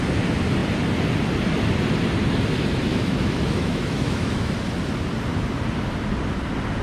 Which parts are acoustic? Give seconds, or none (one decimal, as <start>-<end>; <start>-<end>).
0.0-2.9; 4.5-6.8